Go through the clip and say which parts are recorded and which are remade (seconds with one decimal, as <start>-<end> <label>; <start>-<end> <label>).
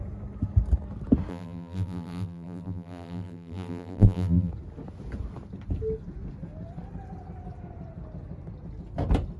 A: 0.0-1.3 recorded; 1.3-4.5 remade; 4.5-9.4 recorded